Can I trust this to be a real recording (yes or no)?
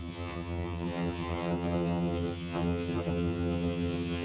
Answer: no